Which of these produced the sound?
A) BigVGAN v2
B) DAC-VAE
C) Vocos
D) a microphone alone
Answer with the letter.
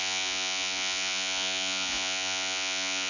C